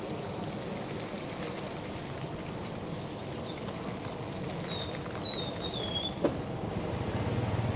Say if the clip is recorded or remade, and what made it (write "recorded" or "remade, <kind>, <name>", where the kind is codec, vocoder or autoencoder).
recorded